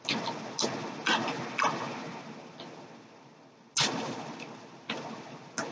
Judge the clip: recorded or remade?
recorded